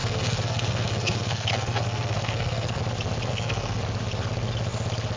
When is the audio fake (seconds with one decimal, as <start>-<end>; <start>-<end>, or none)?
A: 0.0-2.8; 3.3-3.8